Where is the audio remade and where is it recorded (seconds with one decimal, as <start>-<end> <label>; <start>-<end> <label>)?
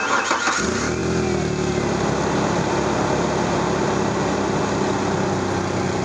0.0-6.0 recorded